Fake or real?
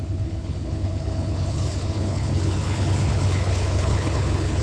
fake